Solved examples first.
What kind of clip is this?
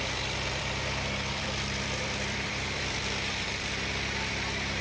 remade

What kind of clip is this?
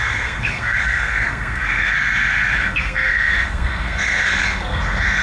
remade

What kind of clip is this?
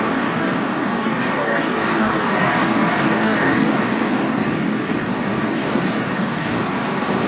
remade